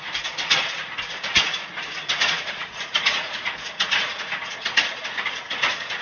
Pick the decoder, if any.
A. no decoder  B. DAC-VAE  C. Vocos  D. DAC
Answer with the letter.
C